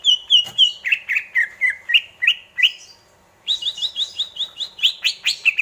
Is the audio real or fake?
fake